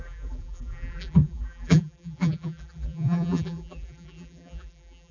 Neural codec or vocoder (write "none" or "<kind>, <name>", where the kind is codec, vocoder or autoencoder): vocoder, BigVGAN v2